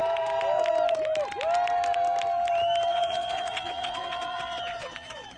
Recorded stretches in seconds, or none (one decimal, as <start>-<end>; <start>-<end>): 0.0-2.9